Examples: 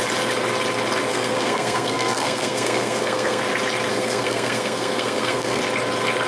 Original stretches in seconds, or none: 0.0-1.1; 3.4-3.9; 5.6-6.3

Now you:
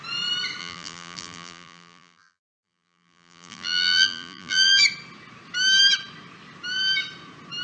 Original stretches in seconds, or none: 0.0-0.6; 4.8-7.6

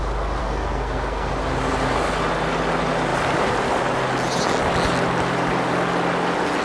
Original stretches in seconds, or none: 0.0-0.4; 1.3-6.6

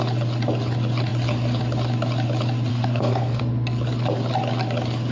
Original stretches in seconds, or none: 0.0-2.7; 3.4-5.1